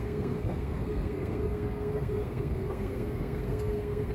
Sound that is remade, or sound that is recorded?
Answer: remade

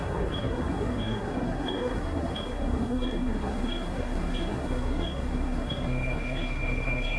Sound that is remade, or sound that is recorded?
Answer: remade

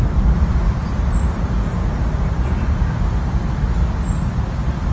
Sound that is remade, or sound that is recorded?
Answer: recorded